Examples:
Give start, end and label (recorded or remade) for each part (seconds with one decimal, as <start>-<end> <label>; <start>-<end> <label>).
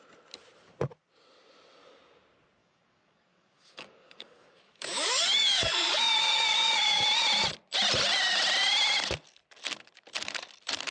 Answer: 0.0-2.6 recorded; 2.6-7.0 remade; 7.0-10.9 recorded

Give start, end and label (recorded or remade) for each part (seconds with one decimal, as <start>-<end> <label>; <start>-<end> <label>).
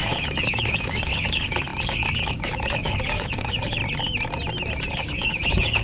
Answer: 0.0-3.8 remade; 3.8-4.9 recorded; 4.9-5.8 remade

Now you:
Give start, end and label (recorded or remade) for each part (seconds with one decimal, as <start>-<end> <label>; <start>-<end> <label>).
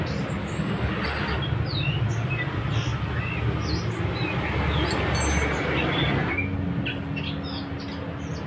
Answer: 0.0-0.4 recorded; 0.4-0.9 remade; 0.9-8.5 recorded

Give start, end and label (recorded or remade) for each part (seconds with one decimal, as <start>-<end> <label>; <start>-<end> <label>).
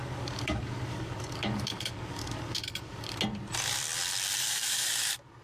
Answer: 0.0-3.2 remade; 3.2-4.4 recorded; 4.4-4.9 remade; 4.9-5.4 recorded